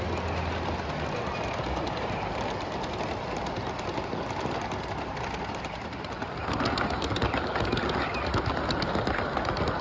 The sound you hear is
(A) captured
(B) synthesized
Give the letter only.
A